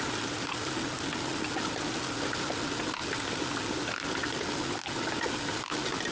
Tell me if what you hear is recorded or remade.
recorded